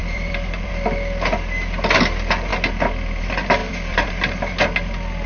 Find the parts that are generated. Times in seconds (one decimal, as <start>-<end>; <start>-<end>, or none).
0.0-0.7; 3.6-4.1